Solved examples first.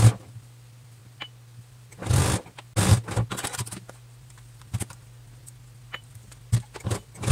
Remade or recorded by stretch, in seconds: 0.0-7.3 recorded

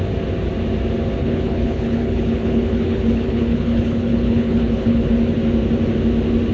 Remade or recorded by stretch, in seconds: 0.0-1.2 recorded; 1.2-5.1 remade; 5.1-6.5 recorded

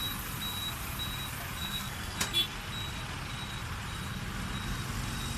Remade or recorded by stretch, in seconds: 0.0-1.6 recorded; 1.6-2.2 remade; 2.2-5.4 recorded

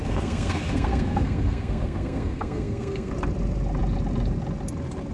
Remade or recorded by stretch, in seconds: 0.0-3.1 remade; 3.1-5.1 recorded

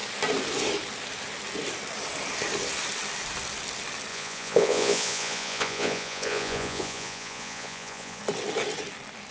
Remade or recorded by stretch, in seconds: 0.0-4.1 recorded; 4.1-8.2 remade; 8.2-9.3 recorded

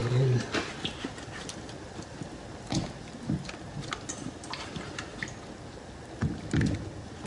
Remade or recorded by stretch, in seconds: 0.0-7.3 recorded

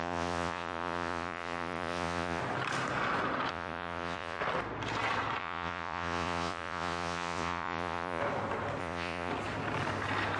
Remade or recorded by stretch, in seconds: 0.0-2.4 remade; 2.4-3.5 recorded; 3.5-4.4 remade; 4.4-5.4 recorded; 5.4-8.2 remade; 8.2-8.8 recorded; 8.8-9.3 remade; 9.3-10.4 recorded

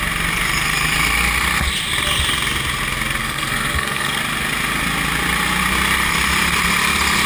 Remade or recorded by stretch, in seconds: 0.0-3.2 recorded; 3.2-4.2 remade; 4.2-7.3 recorded